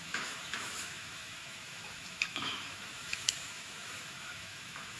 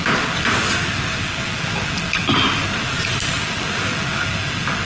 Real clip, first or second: second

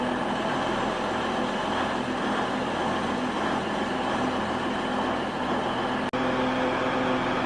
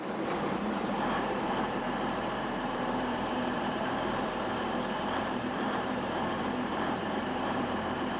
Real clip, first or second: first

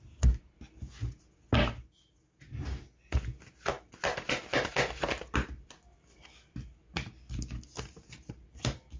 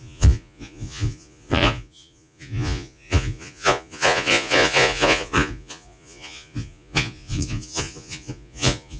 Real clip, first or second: first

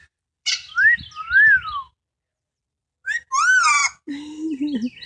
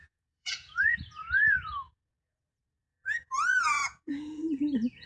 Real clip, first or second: first